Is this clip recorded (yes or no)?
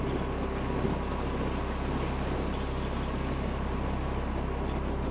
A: yes